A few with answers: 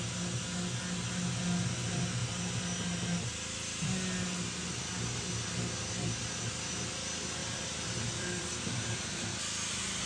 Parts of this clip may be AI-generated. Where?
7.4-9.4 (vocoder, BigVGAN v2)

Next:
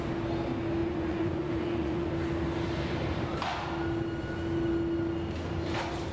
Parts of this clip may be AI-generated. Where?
0.8-2.1 (vocoder, Vocos)

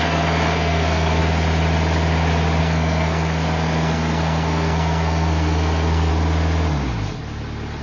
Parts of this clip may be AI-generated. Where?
0.0-1.2 (codec, SNAC); 2.6-6.1

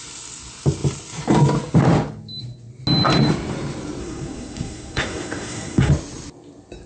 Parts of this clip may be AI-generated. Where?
4.0-5.9 (codec, SNAC)

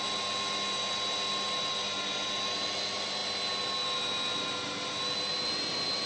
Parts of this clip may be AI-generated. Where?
none

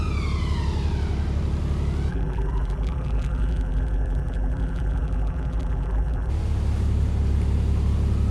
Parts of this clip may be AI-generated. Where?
2.1-6.3 (vocoder, BigVGAN v2)

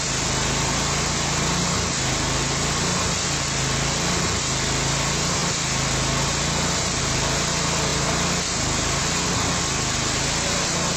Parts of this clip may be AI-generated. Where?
none

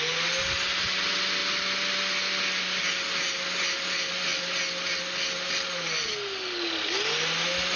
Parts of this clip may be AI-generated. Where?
none